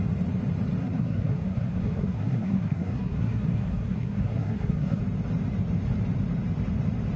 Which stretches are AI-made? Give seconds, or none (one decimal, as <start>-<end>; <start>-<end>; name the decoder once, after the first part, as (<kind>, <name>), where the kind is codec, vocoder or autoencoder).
0.8-5.0 (codec, SNAC)